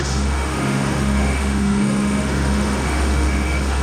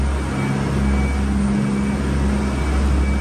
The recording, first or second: second